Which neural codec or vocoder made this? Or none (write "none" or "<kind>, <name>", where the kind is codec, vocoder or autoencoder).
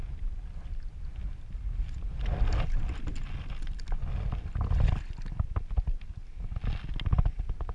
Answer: none